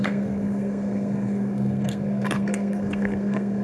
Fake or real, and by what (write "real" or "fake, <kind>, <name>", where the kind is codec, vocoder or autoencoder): fake, codec, SNAC